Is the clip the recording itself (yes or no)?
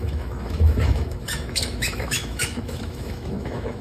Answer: no